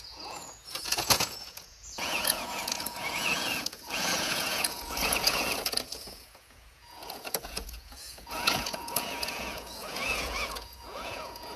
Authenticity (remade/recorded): remade